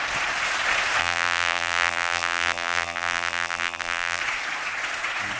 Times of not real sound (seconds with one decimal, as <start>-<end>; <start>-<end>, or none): 1.0-4.2